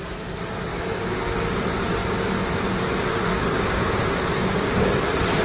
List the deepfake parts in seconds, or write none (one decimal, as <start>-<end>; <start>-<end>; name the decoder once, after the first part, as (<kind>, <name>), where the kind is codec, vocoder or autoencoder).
0.7-1.6 (codec, DAC); 3.3-4.6